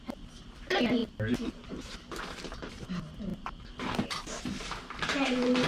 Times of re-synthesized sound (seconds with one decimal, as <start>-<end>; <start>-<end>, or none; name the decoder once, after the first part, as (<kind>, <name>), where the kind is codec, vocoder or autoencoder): 0.0-1.0 (vocoder, BigVGAN v2); 2.2-5.7